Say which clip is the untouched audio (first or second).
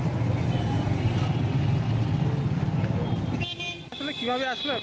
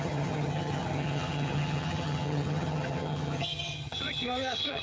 first